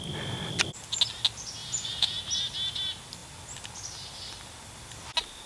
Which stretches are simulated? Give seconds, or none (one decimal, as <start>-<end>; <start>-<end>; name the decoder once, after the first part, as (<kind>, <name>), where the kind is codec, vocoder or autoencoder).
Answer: 1.6-2.2 (vocoder, Vocos)